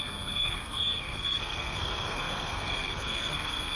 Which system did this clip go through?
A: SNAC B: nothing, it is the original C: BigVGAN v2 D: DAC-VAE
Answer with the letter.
A